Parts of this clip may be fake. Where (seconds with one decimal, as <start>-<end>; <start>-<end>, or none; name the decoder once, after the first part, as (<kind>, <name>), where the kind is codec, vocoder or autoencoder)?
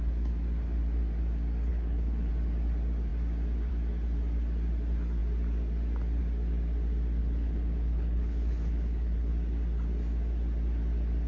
1.7-2.3 (codec, HILCodec); 7.2-9.3